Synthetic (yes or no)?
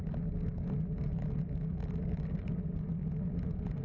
no